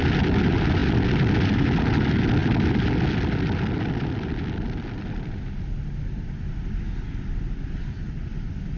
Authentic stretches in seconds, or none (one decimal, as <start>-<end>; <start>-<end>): 0.0-8.8